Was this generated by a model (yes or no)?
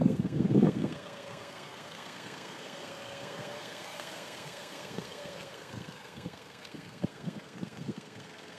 yes